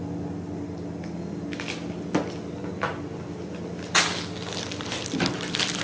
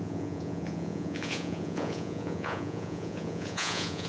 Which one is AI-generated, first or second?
second